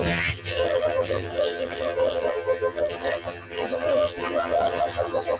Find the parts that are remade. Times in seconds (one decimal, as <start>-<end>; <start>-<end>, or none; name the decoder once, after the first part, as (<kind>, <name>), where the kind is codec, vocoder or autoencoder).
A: 0.0-5.4 (vocoder, HiFi-GAN)